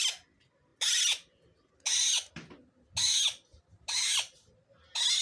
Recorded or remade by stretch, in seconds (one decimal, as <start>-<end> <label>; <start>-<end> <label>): 0.0-5.2 recorded